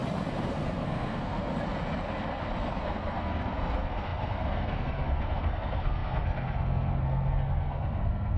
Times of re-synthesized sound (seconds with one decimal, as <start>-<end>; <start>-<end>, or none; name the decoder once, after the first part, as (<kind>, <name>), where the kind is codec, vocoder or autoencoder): 0.5-1.5 (codec, SNAC); 2.8-8.4